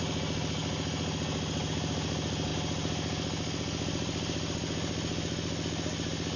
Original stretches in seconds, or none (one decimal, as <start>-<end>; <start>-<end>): 0.0-6.4